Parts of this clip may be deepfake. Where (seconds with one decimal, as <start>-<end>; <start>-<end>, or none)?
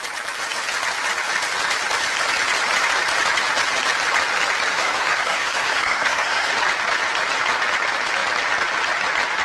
4.7-6.5